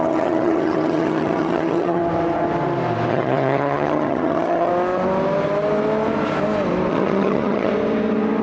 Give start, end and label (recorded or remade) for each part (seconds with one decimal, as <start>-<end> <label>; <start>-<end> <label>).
0.0-2.0 remade; 2.0-3.1 recorded; 3.1-4.7 remade; 4.7-6.9 recorded; 6.9-7.7 remade; 7.7-8.4 recorded